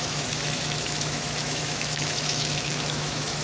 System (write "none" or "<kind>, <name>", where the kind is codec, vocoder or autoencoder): autoencoder, DAC-VAE